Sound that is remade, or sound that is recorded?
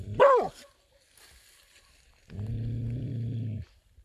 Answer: recorded